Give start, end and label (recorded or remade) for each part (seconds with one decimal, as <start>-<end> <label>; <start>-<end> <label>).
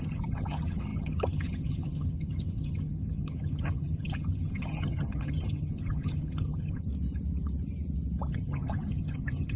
0.0-6.9 remade; 6.9-8.3 recorded; 8.3-9.6 remade